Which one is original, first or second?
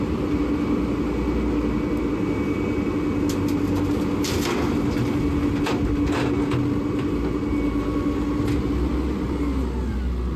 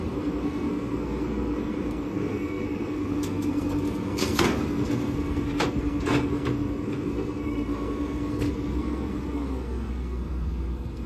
first